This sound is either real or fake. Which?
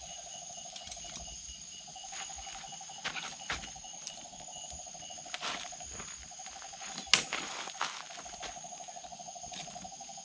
real